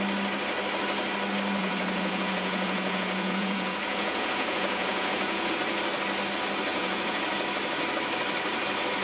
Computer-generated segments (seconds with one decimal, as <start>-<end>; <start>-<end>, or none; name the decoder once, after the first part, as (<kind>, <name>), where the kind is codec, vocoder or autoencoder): 1.6-5.6 (vocoder, Vocos); 6.7-7.2